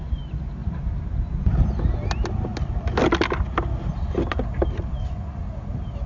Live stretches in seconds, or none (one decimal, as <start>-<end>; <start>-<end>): 0.0-6.1